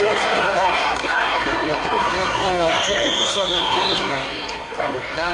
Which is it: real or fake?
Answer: fake